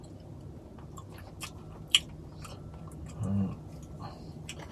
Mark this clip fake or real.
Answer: real